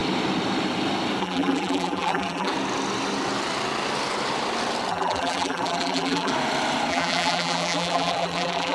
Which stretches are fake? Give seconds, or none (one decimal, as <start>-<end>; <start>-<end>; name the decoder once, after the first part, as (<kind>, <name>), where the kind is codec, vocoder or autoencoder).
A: 1.2-2.5 (vocoder, BigVGAN v2); 4.9-6.3; 6.9-8.7